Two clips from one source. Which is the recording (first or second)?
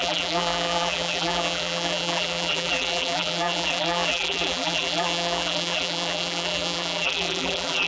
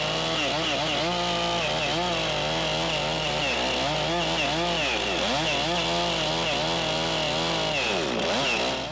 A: second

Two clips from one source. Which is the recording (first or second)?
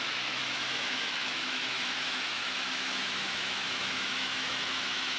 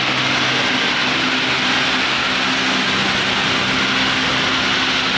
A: second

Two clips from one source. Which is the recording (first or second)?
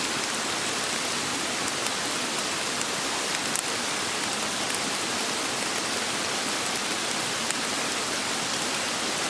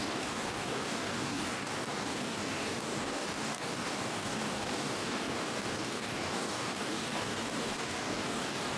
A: first